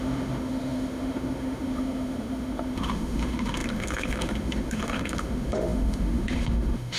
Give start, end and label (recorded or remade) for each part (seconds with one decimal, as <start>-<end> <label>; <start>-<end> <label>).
0.0-7.0 remade